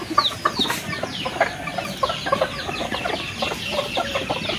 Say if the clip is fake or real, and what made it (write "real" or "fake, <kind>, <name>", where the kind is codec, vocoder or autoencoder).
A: real